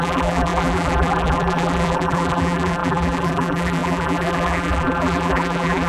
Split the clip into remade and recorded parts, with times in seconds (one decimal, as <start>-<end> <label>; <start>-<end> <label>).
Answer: 0.0-5.9 remade